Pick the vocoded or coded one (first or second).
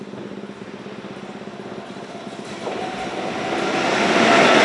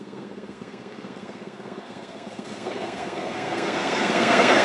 second